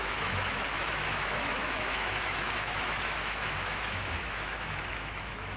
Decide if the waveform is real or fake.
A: fake